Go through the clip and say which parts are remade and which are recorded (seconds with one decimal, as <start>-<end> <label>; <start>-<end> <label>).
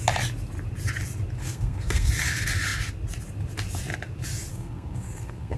0.0-1.4 recorded; 1.4-2.1 remade; 2.1-4.5 recorded; 4.5-5.6 remade